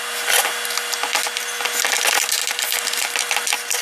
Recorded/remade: recorded